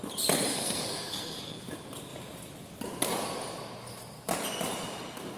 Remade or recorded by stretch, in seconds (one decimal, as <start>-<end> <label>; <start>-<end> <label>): 0.0-0.5 recorded; 0.5-1.6 remade; 1.6-5.4 recorded